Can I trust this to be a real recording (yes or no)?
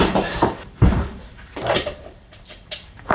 no